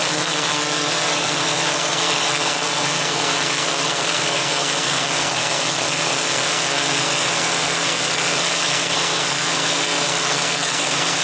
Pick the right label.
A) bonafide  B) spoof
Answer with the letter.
B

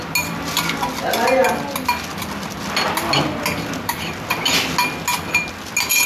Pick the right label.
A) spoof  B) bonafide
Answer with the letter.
B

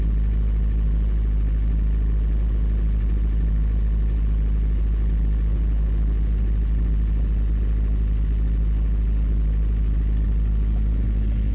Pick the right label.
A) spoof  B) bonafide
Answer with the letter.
B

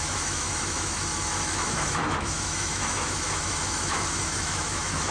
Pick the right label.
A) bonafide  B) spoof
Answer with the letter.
B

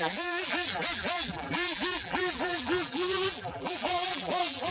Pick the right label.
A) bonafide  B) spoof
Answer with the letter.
B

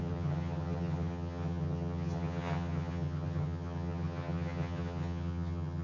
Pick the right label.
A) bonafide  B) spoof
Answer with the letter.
B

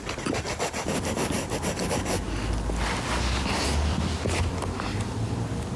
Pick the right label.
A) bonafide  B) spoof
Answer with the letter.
A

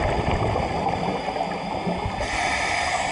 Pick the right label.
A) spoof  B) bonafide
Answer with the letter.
B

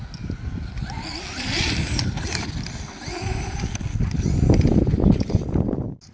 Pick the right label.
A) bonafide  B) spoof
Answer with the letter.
A